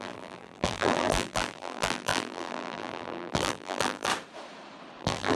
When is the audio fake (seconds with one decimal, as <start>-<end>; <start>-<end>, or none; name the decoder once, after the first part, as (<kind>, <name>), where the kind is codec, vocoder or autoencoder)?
0.0-4.1 (vocoder, BigVGAN v2); 5.0-5.4